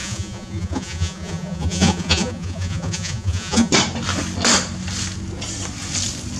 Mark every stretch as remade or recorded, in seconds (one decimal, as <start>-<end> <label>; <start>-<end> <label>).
0.0-3.7 remade; 3.7-6.4 recorded